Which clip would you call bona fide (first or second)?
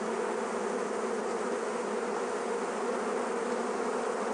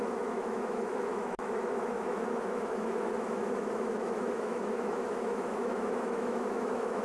first